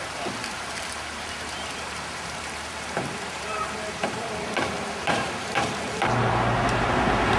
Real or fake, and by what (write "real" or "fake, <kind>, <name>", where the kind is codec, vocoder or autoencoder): fake, vocoder, BigVGAN v2